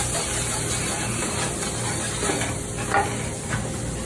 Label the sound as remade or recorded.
recorded